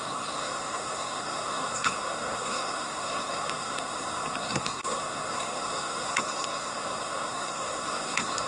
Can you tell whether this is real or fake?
fake